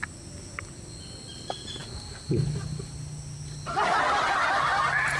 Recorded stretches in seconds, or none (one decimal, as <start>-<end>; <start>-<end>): 0.0-5.2